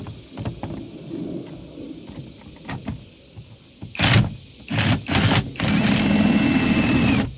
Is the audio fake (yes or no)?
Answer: no